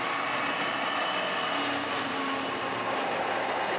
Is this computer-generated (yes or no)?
no